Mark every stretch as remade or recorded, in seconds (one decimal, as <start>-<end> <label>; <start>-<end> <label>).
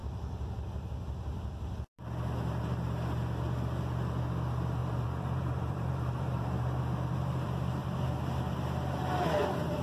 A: 0.0-4.8 recorded; 4.8-8.0 remade; 8.0-9.8 recorded